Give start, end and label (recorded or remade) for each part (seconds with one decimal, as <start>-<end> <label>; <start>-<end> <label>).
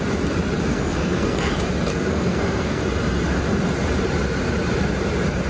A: 0.0-0.7 recorded; 0.7-1.5 remade; 1.5-1.9 recorded; 1.9-2.8 remade; 2.8-5.5 recorded